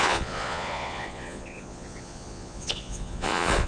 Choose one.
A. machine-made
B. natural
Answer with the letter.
A